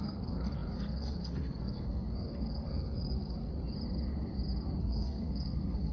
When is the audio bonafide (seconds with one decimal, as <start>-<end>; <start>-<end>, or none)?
3.5-4.8